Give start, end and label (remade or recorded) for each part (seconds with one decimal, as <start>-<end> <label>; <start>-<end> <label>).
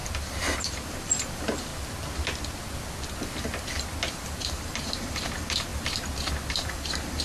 0.0-0.6 recorded; 0.6-1.7 remade; 1.7-4.1 recorded; 4.1-5.7 remade; 5.7-6.5 recorded; 6.5-7.2 remade